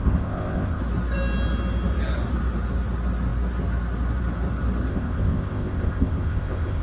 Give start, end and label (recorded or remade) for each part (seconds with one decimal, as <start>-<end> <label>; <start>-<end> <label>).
0.0-0.8 remade; 0.8-4.9 recorded; 4.9-6.8 remade